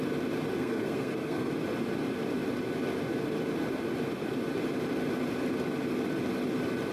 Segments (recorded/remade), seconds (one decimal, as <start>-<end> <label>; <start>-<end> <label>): 0.0-0.6 recorded; 0.6-1.5 remade; 1.5-6.9 recorded